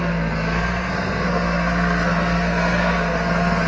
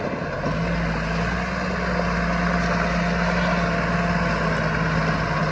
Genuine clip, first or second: second